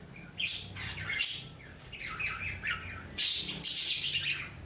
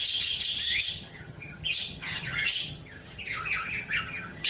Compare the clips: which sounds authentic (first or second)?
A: first